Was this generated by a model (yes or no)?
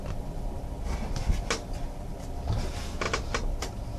no